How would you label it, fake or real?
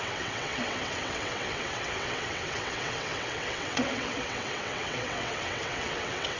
fake